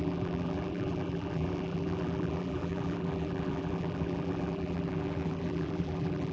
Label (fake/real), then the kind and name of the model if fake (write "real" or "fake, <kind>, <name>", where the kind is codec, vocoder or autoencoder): fake, vocoder, BigVGAN v2